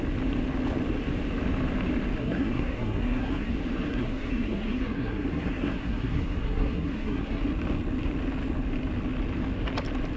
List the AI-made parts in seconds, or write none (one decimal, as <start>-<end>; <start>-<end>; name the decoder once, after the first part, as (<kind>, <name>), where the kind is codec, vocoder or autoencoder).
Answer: 2.2-3.5 (codec, SNAC); 3.9-7.4